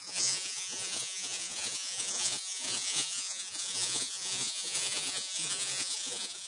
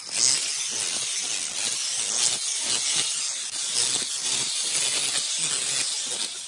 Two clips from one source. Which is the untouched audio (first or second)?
second